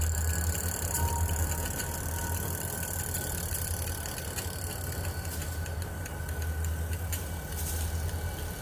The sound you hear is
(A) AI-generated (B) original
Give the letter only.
B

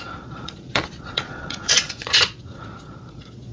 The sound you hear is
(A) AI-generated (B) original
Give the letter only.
A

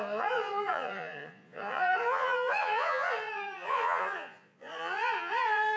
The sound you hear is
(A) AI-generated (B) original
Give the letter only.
A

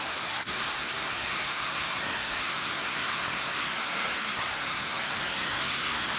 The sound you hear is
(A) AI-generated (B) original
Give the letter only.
A